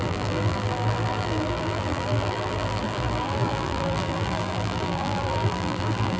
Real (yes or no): no